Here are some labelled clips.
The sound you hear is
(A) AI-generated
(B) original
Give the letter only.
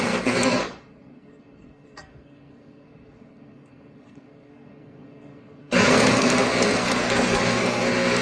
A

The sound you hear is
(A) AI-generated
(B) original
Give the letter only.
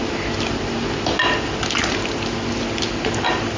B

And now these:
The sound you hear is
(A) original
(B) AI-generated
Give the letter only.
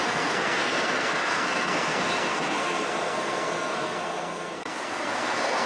B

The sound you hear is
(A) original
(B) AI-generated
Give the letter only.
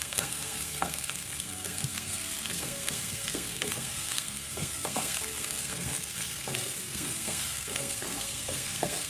B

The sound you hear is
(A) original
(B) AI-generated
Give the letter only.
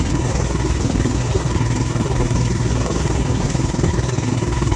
B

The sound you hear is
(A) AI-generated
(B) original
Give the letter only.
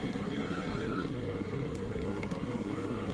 A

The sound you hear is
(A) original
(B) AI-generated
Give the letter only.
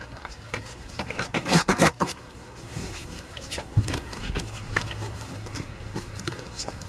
B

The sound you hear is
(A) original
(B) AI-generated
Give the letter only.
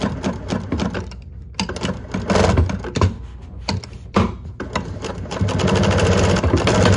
A